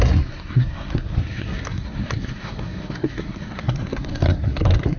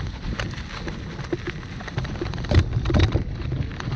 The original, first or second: second